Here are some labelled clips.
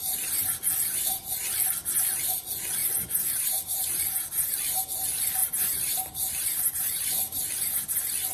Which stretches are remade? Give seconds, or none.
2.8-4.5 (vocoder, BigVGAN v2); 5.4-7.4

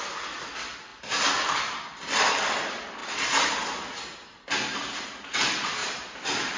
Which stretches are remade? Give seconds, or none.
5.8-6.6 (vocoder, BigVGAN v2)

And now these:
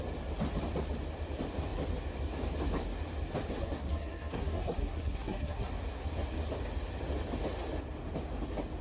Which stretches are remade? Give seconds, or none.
3.6-5.7 (codec, SNAC)

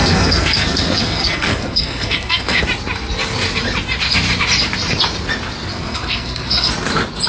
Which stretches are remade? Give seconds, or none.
0.0-2.6 (codec, SNAC); 5.7-6.7

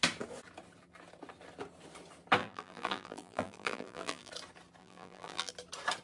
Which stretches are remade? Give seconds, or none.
2.4-4.3 (vocoder, BigVGAN v2); 4.8-5.5

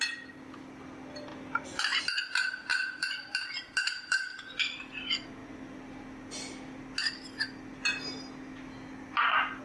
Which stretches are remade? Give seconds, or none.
2.7-4.8 (vocoder, BigVGAN v2)